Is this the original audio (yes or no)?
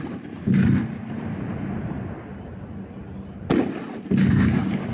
yes